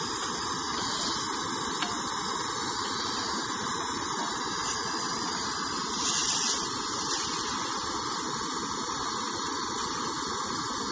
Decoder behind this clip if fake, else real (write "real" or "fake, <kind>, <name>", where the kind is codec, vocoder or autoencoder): real